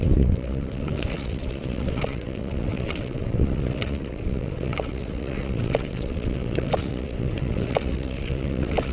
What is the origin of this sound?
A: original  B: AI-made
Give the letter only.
B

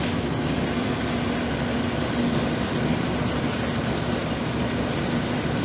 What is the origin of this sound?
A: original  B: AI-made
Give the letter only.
A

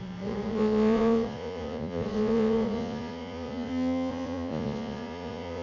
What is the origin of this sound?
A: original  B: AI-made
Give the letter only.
B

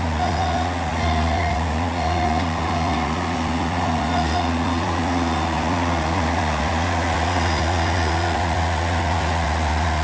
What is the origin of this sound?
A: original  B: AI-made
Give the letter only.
B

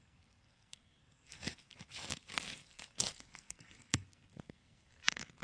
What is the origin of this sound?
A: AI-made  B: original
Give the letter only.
A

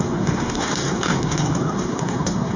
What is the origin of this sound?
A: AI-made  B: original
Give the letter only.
A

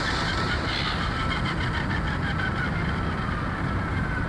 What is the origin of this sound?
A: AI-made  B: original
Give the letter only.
B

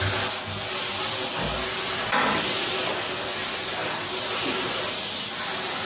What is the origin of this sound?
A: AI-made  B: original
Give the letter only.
B